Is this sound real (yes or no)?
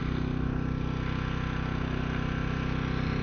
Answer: yes